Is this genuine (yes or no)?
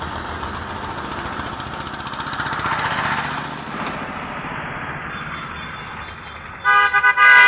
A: yes